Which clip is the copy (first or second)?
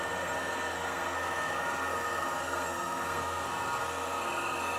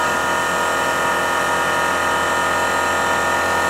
first